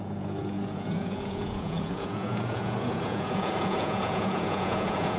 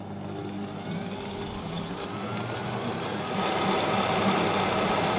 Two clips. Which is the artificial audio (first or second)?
first